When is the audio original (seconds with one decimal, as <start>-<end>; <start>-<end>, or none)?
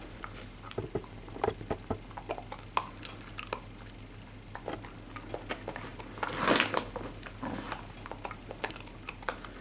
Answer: 0.0-9.6